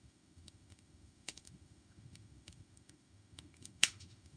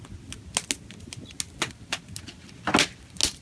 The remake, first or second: first